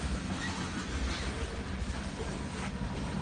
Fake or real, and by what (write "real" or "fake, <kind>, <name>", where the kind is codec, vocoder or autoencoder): real